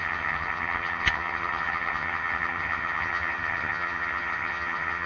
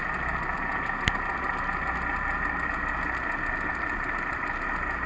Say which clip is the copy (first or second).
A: first